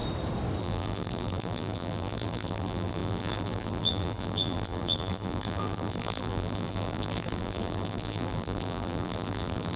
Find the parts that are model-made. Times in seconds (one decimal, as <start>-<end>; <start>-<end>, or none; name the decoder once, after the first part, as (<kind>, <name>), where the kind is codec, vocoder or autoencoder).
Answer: 0.6-9.8 (vocoder, BigVGAN v2)